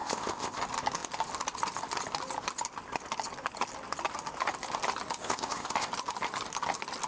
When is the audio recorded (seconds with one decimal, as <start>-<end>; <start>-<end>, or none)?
0.6-5.2; 5.9-7.1